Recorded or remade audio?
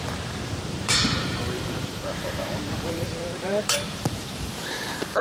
remade